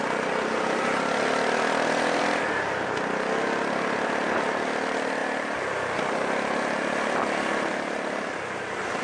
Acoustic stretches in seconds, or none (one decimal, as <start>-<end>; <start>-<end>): 0.0-9.0